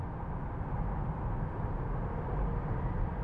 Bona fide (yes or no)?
yes